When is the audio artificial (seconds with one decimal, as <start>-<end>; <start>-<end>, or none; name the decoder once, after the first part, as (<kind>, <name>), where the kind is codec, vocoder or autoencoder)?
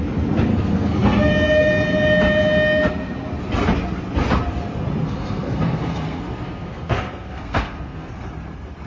0.5-1.3 (codec, SNAC); 5.0-8.1